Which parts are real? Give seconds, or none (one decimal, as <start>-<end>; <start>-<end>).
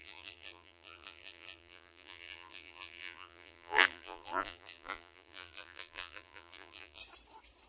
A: 7.0-7.7